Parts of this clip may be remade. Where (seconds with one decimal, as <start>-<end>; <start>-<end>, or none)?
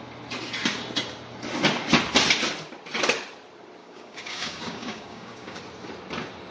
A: 3.8-5.6